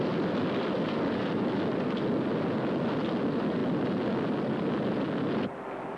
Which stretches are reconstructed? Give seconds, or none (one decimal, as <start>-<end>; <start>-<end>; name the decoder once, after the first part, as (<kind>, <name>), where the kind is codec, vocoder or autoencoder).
none